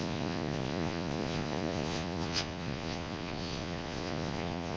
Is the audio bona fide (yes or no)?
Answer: no